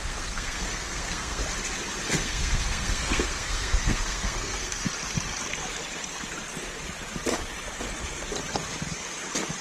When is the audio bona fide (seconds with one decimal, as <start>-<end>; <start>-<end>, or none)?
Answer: 1.4-2.1; 4.9-9.6